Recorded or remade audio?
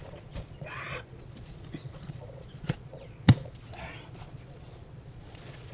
remade